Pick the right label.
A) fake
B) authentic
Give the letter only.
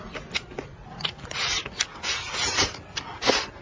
B